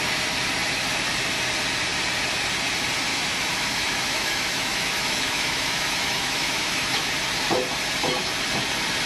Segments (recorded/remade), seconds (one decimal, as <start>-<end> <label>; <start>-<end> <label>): 0.0-3.1 recorded; 3.1-7.1 remade; 7.1-9.1 recorded